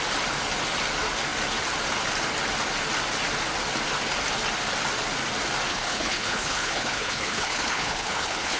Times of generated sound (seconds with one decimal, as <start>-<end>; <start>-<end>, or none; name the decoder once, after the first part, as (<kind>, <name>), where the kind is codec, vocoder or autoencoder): 5.7-8.6 (codec, HILCodec)